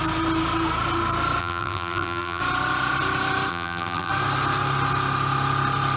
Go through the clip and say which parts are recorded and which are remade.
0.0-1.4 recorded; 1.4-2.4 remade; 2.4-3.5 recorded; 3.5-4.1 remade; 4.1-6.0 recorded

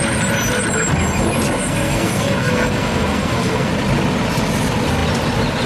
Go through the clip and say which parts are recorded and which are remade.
0.0-1.6 recorded; 1.6-3.7 remade; 3.7-5.7 recorded

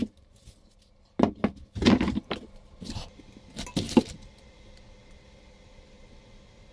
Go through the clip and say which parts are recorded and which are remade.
0.0-6.7 recorded

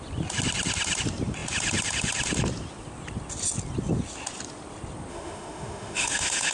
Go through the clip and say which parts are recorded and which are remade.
0.0-5.1 recorded; 5.1-6.5 remade

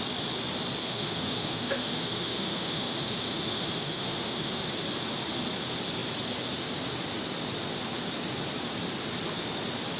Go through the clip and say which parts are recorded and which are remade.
0.0-0.8 recorded; 0.8-4.7 remade; 4.7-10.0 recorded

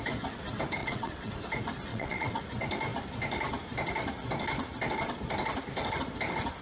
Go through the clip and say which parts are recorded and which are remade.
0.0-0.8 recorded; 0.8-1.3 remade; 1.3-1.9 recorded; 1.9-2.4 remade; 2.4-6.6 recorded